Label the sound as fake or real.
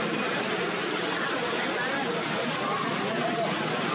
real